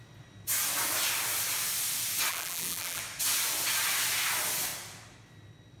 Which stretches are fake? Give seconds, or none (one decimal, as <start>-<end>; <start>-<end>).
2.3-3.0